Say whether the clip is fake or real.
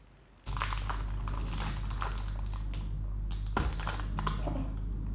real